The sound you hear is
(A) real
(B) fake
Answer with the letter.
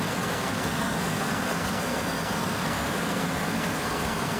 B